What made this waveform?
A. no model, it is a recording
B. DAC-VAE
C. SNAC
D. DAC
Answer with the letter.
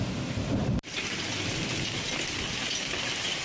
A